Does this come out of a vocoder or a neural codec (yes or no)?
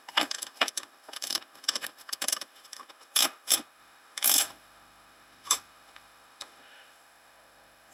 yes